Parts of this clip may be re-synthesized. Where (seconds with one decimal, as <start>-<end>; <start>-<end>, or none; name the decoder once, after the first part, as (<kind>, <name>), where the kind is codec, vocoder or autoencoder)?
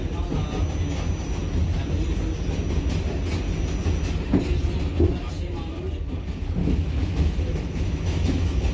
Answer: 6.6-8.7 (autoencoder, DAC-VAE)